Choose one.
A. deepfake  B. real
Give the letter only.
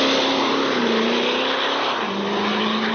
B